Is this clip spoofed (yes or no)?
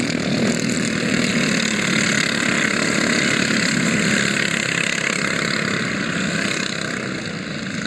yes